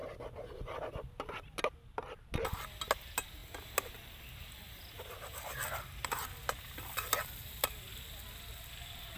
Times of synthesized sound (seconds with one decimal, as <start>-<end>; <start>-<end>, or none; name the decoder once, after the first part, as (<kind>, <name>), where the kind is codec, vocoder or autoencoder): none